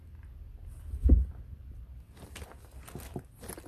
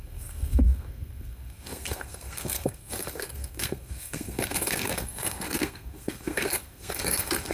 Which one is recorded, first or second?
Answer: first